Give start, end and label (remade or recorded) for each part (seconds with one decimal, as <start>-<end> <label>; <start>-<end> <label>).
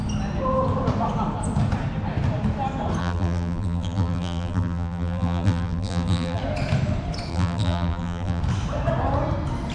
0.0-3.0 recorded; 3.0-6.4 remade; 6.4-7.3 recorded; 7.3-8.4 remade; 8.4-9.7 recorded